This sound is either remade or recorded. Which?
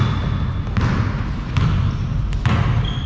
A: recorded